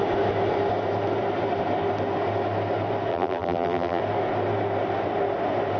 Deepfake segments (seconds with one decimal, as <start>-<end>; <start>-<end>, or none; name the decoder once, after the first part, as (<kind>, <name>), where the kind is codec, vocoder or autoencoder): 3.1-4.0 (vocoder, BigVGAN v2)